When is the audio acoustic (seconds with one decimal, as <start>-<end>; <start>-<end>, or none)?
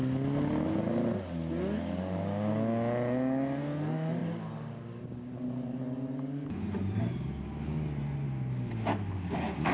0.0-9.7